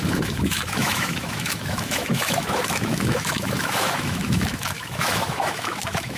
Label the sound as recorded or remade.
remade